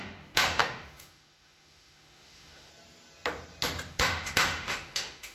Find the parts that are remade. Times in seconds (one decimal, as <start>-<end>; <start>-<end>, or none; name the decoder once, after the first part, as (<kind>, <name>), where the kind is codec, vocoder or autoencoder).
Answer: 0.0-2.7 (autoencoder, DAC-VAE); 3.9-5.3